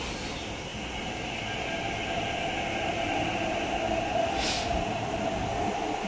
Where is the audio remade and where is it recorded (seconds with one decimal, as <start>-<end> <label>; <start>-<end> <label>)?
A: 0.0-6.1 recorded